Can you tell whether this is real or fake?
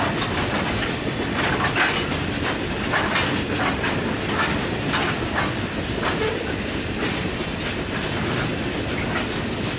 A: real